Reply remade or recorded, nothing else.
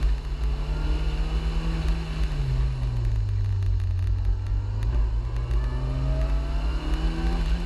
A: recorded